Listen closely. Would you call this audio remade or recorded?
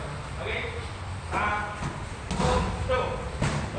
recorded